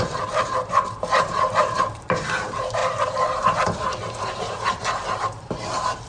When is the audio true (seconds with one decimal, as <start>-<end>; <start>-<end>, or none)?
none